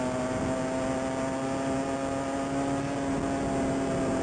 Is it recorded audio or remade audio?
recorded